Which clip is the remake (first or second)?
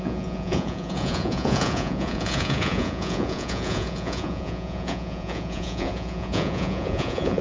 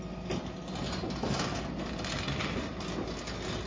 first